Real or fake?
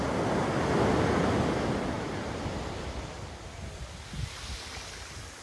real